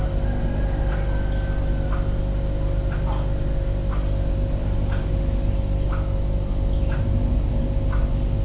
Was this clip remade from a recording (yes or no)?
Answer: no